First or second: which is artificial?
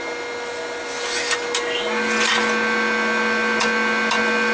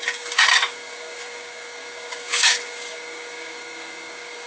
second